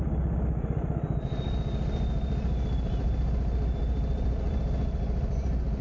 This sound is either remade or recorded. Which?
recorded